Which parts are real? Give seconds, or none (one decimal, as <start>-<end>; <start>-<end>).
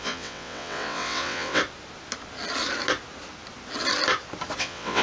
1.6-4.6